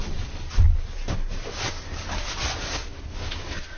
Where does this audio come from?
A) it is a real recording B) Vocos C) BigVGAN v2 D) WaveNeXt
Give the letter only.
A